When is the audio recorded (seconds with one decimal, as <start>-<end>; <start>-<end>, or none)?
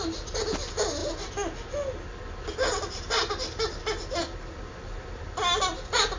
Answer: 0.0-6.2